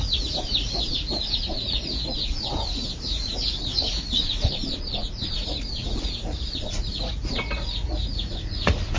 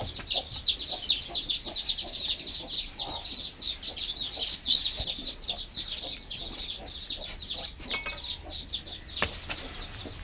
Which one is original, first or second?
second